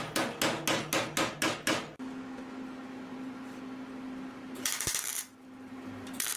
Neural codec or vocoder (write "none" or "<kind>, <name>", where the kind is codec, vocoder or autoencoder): none